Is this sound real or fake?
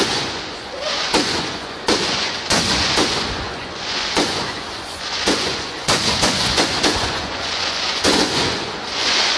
fake